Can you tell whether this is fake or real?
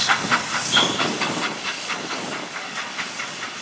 fake